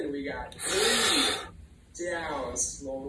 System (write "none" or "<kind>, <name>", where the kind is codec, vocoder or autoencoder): none